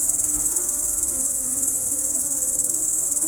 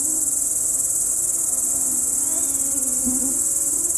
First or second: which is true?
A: second